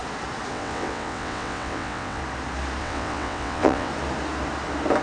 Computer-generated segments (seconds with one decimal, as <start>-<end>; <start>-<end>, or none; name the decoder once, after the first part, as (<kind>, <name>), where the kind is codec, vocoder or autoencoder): 0.5-2.2 (vocoder, WaveNeXt); 2.8-3.9